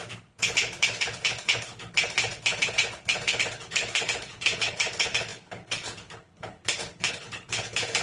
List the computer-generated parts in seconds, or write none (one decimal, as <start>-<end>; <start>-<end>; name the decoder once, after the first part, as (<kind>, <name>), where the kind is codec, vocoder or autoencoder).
0.0-8.0 (codec, HILCodec)